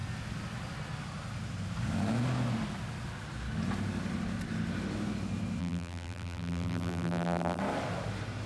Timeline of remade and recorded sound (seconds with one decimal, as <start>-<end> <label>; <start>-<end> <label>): 0.0-5.6 recorded; 5.6-7.6 remade; 7.6-8.5 recorded